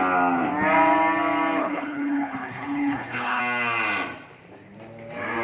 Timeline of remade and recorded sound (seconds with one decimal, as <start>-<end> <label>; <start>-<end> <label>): 0.0-1.6 recorded; 1.6-3.4 remade; 3.4-5.4 recorded